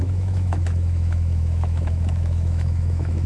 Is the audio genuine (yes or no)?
no